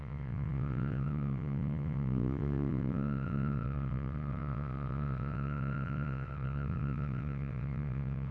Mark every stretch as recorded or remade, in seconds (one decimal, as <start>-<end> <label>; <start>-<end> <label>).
0.0-8.3 remade